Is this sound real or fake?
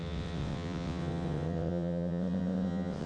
fake